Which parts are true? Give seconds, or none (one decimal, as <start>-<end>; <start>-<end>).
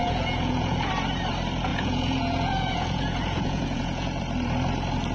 0.9-1.7; 4.2-5.1